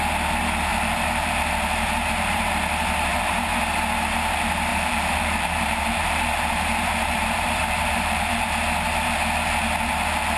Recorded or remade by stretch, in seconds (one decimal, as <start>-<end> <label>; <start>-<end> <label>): 0.0-0.7 recorded; 0.7-2.5 remade; 2.5-3.1 recorded; 3.1-3.6 remade; 3.6-4.7 recorded; 4.7-8.5 remade; 8.5-10.4 recorded